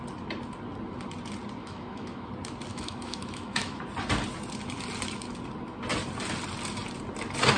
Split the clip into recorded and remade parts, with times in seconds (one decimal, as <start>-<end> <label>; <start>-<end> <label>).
0.0-1.6 recorded; 1.6-2.3 remade; 2.3-2.7 recorded; 2.7-3.8 remade; 3.8-7.6 recorded